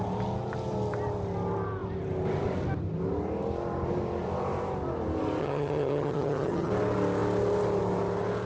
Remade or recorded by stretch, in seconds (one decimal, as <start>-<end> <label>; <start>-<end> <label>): 0.0-5.4 recorded; 5.4-6.7 remade; 6.7-8.5 recorded